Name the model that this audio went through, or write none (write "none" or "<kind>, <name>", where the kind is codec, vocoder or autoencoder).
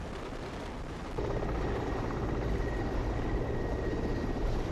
none